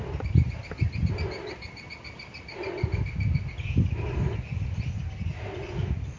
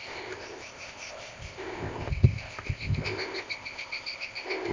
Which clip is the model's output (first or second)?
second